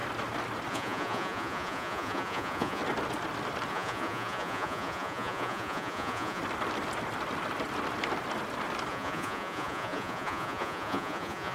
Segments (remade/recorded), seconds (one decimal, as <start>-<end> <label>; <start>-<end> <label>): 0.0-0.7 recorded; 0.7-2.8 remade; 2.8-3.7 recorded; 3.7-6.4 remade; 6.4-8.9 recorded; 8.9-11.5 remade